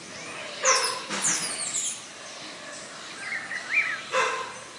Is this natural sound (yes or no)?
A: yes